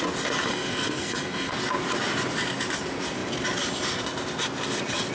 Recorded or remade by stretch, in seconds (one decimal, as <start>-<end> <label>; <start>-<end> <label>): 0.0-0.5 recorded; 0.5-1.5 remade; 1.5-5.1 recorded